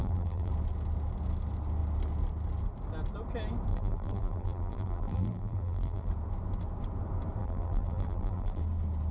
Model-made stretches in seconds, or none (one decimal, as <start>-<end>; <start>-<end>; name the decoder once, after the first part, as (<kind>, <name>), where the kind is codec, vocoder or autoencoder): 0.0-0.5 (vocoder, BigVGAN v2); 3.7-6.1; 7.4-8.6